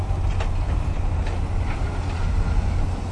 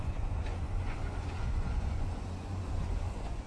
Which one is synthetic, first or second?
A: second